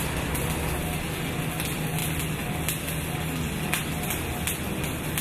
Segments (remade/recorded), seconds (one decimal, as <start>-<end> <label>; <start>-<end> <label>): 0.0-5.2 recorded